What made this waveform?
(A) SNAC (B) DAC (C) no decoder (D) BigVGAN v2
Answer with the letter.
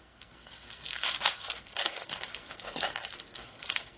A